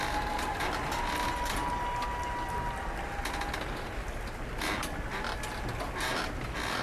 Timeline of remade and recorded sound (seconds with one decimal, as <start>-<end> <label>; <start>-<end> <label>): 0.0-6.8 recorded